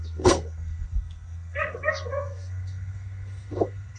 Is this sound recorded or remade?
remade